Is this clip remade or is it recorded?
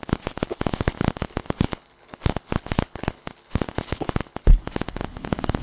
remade